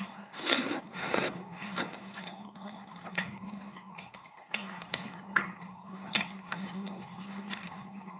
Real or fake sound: fake